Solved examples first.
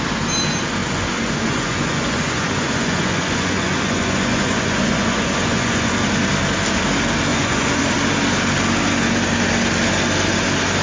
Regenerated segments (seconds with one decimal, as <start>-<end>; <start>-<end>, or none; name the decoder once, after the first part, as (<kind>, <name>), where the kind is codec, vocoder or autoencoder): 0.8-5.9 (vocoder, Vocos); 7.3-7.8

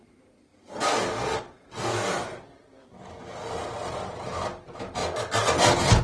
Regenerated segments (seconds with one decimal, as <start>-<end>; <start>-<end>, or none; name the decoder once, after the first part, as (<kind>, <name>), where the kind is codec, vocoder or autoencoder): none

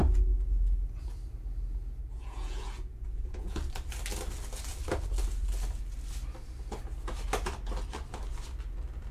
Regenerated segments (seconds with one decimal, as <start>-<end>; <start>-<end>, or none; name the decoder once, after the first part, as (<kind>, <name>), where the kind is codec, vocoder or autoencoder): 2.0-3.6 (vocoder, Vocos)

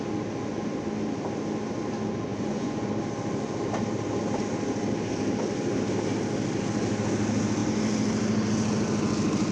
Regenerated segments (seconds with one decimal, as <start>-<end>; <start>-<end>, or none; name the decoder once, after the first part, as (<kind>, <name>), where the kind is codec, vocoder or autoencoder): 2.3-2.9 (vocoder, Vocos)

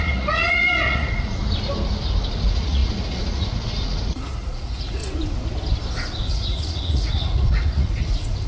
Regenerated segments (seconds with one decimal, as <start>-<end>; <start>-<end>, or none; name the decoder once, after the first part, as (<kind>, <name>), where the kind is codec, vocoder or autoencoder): 0.0-1.4 (vocoder, Vocos); 2.3-5.0; 6.3-8.5

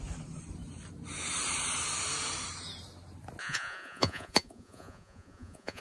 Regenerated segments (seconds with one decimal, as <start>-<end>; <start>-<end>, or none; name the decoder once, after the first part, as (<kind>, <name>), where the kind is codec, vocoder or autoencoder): 3.4-5.8 (vocoder, Vocos)